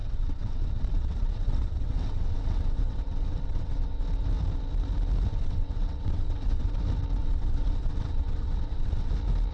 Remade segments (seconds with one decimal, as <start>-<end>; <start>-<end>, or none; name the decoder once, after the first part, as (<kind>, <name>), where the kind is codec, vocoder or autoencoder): 0.0-4.0 (vocoder, WaveNeXt); 5.3-6.8; 7.2-9.1